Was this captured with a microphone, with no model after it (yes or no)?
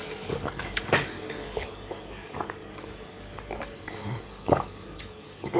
no